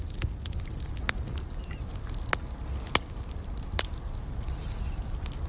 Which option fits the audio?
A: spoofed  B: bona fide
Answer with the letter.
B